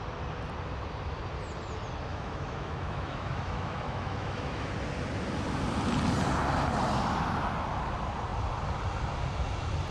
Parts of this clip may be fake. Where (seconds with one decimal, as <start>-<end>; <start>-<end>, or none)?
2.1-4.7

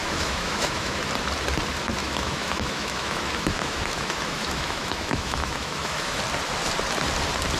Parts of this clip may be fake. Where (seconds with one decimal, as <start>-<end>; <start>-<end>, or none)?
0.0-1.0; 2.0-6.2

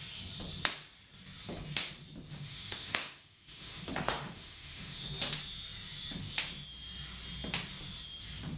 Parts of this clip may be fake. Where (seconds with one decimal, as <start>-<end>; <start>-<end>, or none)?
2.3-5.1

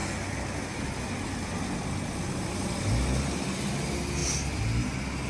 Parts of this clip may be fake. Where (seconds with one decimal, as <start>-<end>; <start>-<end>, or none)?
none

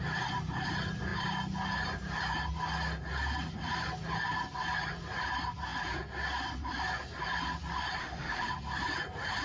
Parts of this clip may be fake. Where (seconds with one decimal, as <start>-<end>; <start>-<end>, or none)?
8.0-8.5

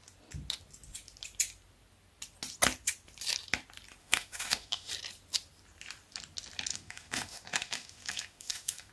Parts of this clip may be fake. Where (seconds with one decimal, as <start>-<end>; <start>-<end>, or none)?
4.0-4.9; 6.7-8.9